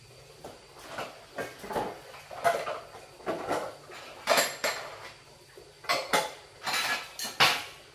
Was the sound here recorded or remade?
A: recorded